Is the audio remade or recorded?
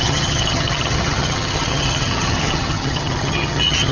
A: remade